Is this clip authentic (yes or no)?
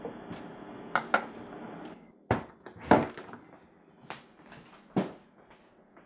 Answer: yes